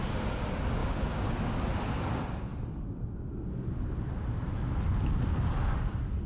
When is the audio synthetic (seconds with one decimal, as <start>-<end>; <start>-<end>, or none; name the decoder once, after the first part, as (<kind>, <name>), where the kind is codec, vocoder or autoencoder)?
0.8-1.6 (codec, DAC)